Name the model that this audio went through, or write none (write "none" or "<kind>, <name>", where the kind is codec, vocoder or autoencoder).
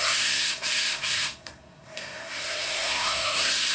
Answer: codec, SNAC